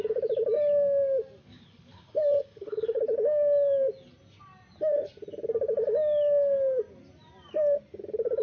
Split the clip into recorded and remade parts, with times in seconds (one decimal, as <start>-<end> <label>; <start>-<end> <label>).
0.0-1.4 recorded; 1.4-3.0 remade; 3.0-8.4 recorded